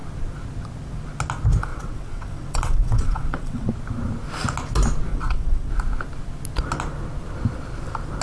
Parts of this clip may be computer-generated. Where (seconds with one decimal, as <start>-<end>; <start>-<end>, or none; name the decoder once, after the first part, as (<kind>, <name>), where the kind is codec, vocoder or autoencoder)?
1.7-3.7 (vocoder, WaveNeXt); 5.1-5.7